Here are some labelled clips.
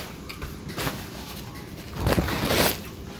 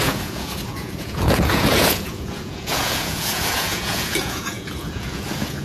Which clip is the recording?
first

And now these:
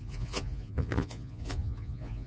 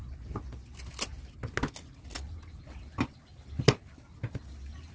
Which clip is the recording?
second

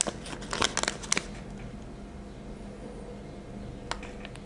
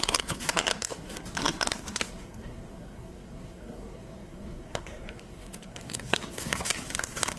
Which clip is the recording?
first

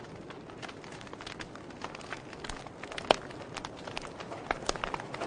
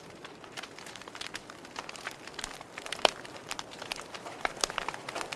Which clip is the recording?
first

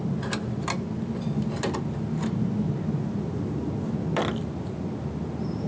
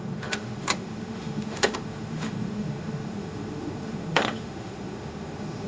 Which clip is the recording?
first